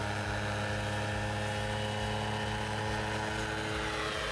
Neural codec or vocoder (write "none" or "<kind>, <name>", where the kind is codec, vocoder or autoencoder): none